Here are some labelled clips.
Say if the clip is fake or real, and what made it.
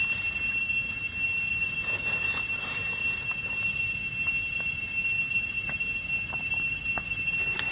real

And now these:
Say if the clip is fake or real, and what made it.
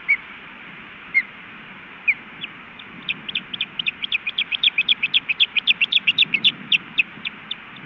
fake, vocoder, BigVGAN v2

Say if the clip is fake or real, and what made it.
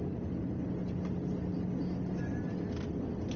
real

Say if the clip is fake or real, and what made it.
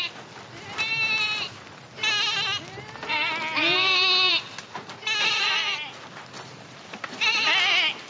real